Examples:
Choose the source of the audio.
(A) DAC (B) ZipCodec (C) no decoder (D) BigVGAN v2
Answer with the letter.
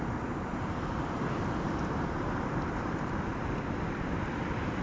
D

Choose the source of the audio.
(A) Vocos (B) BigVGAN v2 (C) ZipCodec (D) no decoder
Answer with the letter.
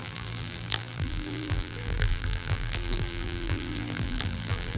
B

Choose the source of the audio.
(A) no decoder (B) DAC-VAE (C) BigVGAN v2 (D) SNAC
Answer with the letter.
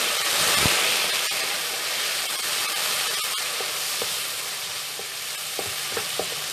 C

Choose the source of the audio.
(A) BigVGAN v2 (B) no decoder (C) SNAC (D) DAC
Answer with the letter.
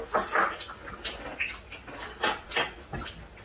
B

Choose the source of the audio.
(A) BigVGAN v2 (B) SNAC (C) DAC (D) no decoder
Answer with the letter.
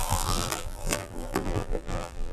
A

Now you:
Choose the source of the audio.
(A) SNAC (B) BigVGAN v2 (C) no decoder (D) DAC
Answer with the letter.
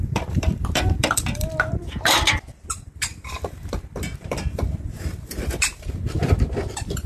B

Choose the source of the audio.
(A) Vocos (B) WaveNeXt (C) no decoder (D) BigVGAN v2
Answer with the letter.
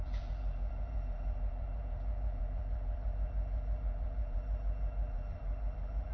D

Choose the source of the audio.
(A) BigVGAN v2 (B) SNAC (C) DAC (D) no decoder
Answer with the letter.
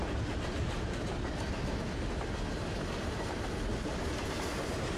D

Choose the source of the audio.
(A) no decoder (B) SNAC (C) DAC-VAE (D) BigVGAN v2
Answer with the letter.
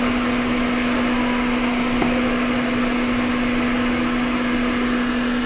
A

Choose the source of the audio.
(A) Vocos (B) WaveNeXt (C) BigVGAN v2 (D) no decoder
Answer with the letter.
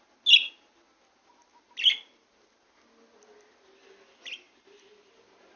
D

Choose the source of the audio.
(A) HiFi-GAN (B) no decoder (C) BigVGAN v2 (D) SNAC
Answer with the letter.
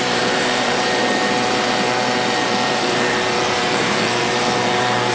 C